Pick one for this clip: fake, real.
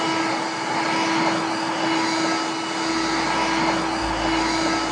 real